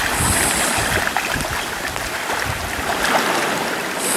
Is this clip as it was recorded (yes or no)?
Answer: yes